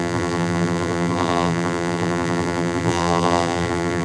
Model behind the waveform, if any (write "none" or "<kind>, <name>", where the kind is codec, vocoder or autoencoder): vocoder, BigVGAN v2